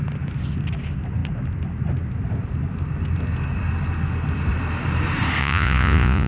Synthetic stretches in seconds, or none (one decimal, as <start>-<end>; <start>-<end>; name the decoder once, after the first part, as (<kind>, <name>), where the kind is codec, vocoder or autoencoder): 5.4-6.3 (vocoder, Vocos)